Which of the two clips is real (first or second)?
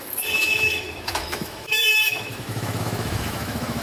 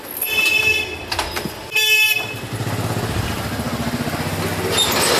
second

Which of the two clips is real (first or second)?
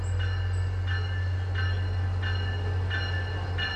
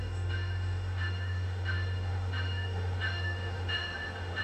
first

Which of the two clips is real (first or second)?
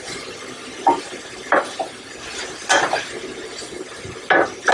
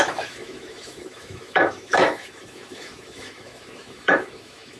first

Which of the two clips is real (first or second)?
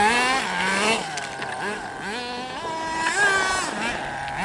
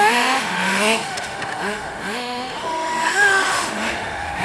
first